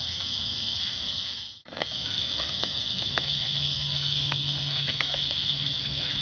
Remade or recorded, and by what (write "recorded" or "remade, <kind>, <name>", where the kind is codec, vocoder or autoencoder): remade, codec, SNAC